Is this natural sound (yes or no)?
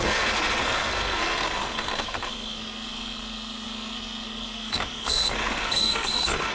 no